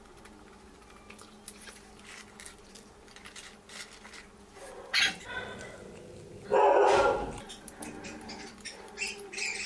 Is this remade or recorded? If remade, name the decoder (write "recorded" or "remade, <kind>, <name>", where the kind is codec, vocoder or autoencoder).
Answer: recorded